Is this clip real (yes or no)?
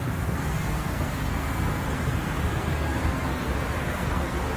no